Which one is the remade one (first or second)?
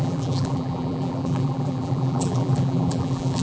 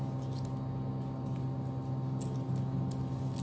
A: first